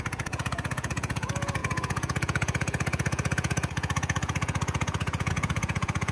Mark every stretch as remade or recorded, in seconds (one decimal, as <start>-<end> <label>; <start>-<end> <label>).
0.0-6.1 remade